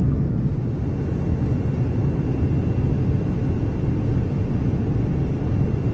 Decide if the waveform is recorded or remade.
recorded